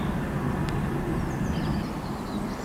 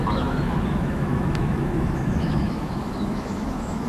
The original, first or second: first